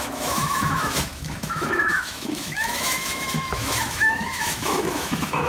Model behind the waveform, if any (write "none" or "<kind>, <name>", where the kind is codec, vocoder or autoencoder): autoencoder, DAC-VAE